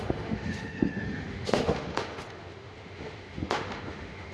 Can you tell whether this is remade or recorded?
remade